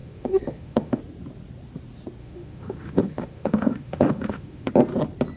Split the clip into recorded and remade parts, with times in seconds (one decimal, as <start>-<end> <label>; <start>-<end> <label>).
0.0-1.0 remade; 1.0-2.2 recorded; 2.2-4.7 remade; 4.7-5.4 recorded